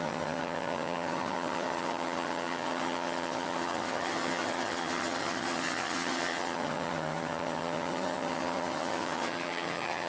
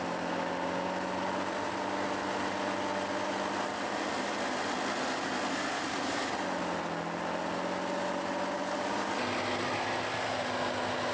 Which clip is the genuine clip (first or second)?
second